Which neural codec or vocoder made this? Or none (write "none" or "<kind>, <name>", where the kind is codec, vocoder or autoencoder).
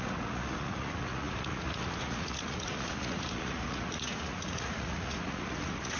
vocoder, Vocos